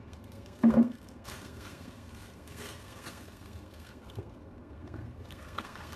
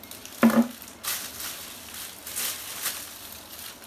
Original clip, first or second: second